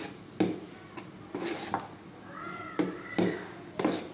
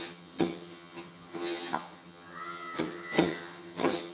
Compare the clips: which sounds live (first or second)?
first